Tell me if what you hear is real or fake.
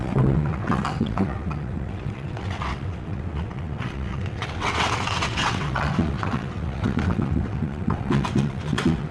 fake